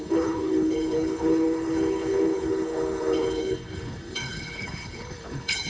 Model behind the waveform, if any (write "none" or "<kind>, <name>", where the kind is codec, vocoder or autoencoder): codec, HILCodec